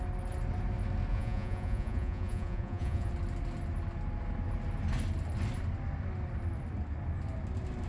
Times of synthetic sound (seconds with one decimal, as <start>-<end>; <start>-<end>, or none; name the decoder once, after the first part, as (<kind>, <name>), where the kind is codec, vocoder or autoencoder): 1.1-3.1 (vocoder, Vocos)